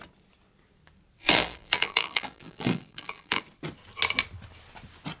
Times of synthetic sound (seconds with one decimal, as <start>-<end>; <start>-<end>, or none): 1.2-3.4